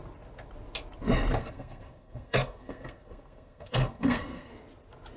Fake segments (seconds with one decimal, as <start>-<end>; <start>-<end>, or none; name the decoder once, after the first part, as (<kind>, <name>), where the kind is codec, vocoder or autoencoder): 1.4-4.5 (codec, SNAC)